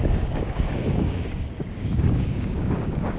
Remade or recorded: remade